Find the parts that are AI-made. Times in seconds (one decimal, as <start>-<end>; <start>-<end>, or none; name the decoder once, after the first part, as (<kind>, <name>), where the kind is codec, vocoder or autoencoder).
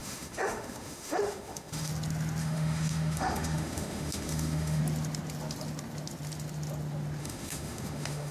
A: 0.0-1.9 (autoencoder, DAC-VAE); 2.4-4.8; 7.2-8.3